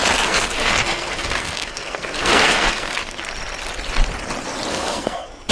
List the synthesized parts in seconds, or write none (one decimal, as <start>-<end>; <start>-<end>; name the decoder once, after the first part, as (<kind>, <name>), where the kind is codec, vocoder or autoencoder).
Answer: 0.0-3.2 (codec, SNAC); 4.7-5.5